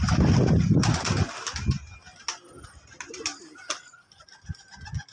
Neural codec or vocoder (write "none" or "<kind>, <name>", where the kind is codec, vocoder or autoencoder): none